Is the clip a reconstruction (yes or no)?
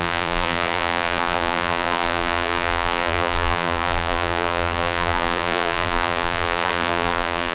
yes